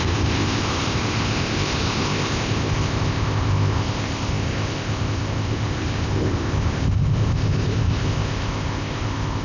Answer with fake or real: fake